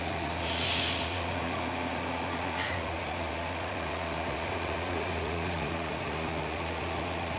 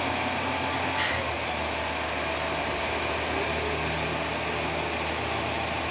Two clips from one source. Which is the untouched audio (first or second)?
second